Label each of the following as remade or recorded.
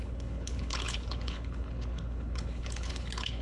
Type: remade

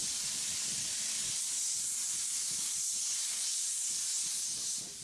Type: recorded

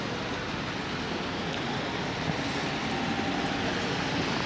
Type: recorded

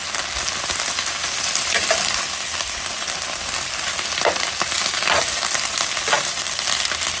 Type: recorded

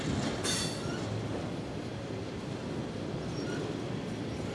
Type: recorded